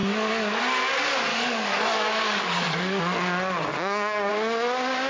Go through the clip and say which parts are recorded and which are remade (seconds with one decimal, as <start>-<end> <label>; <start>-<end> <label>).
0.0-0.6 remade; 0.6-1.3 recorded; 1.3-3.0 remade; 3.0-3.7 recorded; 3.7-4.3 remade; 4.3-5.1 recorded